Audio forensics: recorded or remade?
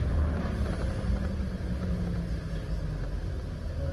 recorded